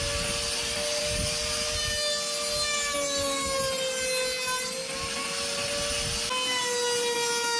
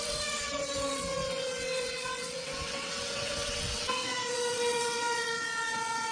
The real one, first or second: first